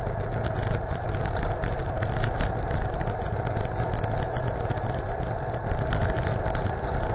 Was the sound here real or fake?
real